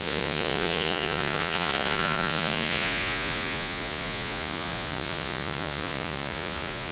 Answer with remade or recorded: remade